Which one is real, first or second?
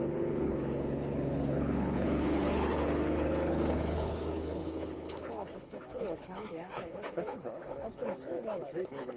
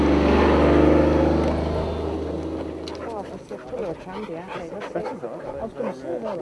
second